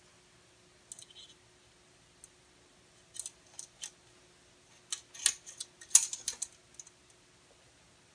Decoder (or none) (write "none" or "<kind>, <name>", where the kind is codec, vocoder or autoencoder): none